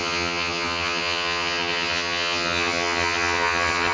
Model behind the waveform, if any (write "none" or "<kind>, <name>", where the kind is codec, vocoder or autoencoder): vocoder, HiFi-GAN